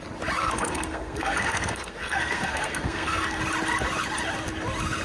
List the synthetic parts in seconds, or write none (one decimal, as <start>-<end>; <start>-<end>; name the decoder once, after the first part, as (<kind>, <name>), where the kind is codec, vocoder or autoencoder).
0.4-3.4 (codec, SNAC)